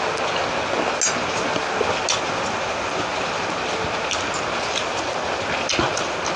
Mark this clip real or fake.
real